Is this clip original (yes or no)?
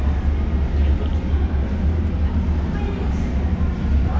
yes